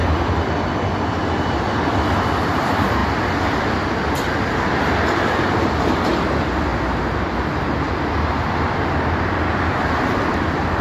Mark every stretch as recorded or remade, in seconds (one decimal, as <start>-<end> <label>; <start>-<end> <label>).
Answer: 0.0-1.5 recorded; 1.5-3.0 remade; 3.0-5.2 recorded; 5.2-6.7 remade; 6.7-9.7 recorded; 9.7-10.8 remade